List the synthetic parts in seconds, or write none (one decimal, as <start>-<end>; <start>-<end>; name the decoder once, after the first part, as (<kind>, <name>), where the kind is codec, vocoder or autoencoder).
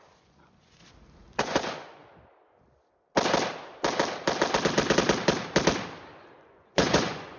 0.0-0.8 (vocoder, Vocos); 1.4-2.0; 6.4-7.4